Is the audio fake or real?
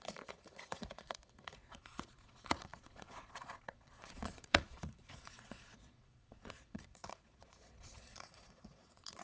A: fake